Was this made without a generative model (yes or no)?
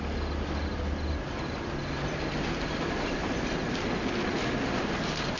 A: yes